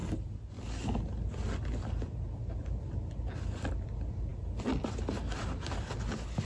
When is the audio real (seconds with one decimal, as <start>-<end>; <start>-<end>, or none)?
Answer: 0.0-6.4